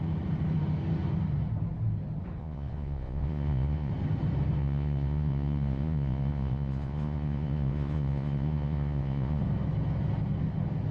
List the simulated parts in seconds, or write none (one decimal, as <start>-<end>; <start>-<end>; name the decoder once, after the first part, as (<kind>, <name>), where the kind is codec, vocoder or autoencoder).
2.4-3.9 (vocoder, Vocos); 4.6-9.4